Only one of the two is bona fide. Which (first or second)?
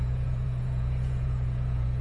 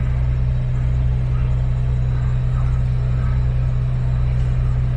second